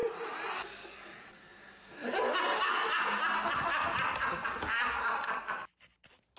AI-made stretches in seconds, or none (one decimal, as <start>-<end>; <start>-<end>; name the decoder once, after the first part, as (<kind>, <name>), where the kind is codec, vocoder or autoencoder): none